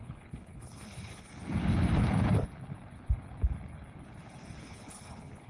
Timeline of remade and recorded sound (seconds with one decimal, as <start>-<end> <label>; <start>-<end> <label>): 0.0-1.3 remade; 1.3-4.6 recorded; 4.6-5.5 remade